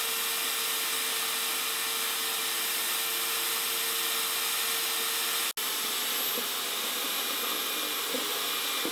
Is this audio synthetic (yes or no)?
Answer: no